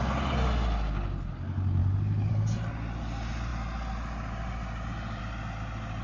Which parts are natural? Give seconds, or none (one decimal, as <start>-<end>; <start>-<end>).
0.0-6.0